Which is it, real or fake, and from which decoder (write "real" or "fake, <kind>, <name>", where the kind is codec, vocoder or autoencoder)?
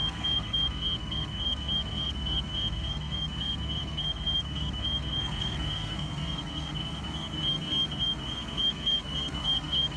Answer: fake, codec, SNAC